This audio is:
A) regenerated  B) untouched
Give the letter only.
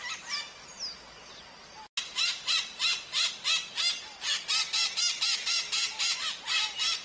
B